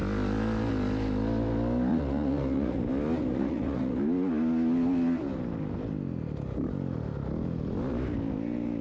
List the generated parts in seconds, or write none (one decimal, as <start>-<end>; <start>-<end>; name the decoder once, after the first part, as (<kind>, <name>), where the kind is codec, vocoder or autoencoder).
1.9-2.8 (vocoder, Vocos); 3.3-3.9